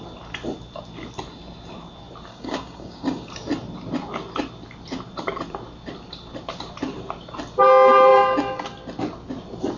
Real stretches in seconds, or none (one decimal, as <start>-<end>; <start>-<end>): 0.0-2.3; 3.3-9.8